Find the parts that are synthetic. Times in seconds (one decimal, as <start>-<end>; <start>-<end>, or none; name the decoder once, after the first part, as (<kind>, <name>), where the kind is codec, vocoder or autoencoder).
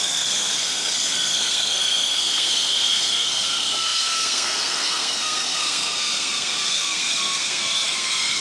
0.0-8.4 (codec, SNAC)